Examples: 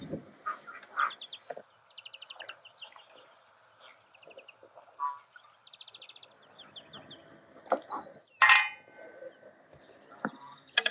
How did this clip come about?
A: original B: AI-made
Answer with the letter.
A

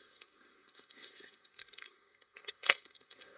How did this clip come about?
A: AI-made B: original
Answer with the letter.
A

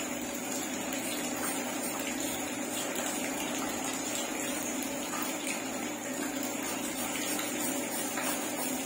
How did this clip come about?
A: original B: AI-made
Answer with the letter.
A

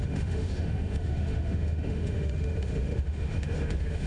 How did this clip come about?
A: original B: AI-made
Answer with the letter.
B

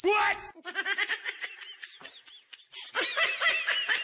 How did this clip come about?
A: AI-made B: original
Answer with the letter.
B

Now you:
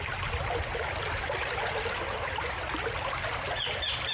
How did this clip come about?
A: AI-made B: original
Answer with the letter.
B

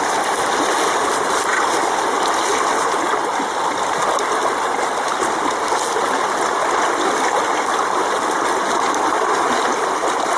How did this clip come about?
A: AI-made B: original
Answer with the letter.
B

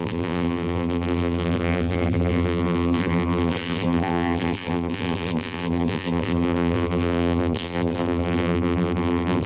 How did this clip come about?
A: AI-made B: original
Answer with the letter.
A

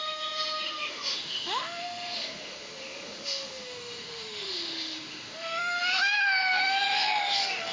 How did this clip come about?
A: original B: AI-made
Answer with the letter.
B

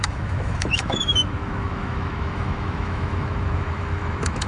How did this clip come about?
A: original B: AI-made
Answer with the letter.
B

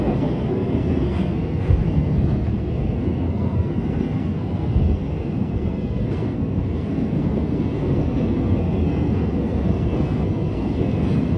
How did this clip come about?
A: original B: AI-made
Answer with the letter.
B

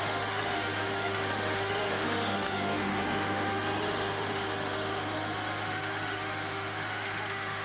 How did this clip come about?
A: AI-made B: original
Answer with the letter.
A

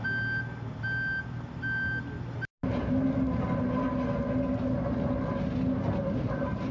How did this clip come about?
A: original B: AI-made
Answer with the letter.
A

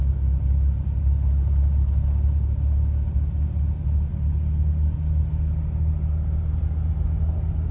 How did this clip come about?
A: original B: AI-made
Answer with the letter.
A